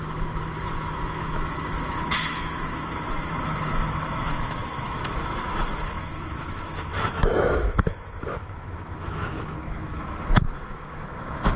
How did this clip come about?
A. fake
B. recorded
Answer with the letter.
A